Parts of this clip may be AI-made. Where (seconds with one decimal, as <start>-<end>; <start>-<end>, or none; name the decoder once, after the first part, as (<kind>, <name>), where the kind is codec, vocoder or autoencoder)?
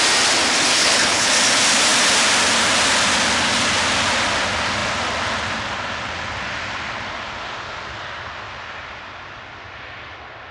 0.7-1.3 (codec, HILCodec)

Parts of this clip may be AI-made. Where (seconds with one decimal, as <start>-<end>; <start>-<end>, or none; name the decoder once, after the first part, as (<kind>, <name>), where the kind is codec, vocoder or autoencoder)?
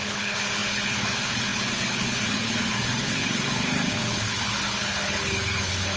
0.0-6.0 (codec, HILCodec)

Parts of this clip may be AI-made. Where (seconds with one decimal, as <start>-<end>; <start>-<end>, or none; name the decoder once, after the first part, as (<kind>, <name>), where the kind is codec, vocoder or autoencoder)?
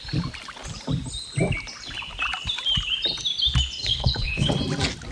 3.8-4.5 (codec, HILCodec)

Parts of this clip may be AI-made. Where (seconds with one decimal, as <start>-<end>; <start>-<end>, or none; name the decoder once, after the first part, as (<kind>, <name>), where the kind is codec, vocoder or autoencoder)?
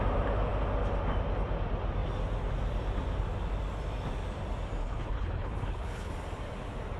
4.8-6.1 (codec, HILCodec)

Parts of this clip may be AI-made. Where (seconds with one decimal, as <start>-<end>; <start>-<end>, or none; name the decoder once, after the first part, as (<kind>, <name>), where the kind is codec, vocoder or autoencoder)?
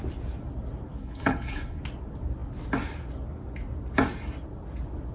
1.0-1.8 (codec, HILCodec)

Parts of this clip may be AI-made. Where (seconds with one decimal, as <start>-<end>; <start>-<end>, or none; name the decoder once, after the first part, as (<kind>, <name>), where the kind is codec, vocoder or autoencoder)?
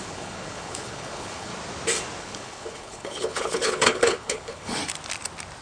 0.0-1.5 (codec, HILCodec); 2.2-4.8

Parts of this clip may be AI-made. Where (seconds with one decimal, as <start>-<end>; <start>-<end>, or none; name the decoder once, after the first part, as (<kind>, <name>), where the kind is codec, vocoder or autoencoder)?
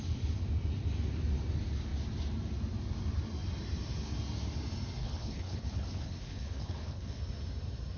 5.0-7.2 (codec, HILCodec)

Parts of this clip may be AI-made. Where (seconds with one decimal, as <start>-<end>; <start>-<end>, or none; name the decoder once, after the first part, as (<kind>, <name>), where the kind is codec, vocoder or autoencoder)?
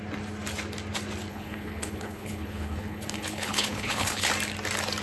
1.3-4.3 (codec, HILCodec)